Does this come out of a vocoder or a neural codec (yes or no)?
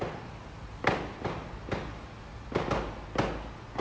no